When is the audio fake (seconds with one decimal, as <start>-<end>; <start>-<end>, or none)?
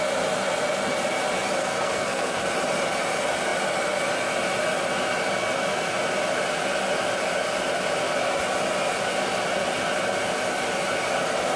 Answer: 1.6-2.4